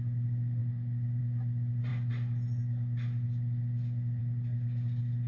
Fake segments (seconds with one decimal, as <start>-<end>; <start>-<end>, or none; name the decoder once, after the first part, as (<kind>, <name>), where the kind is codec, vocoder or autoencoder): none